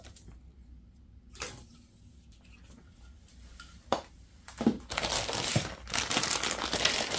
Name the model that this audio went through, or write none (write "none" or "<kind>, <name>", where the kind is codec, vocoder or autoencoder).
none